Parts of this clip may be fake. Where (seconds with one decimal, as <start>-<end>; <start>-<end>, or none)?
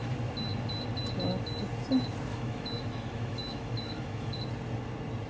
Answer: 2.3-4.4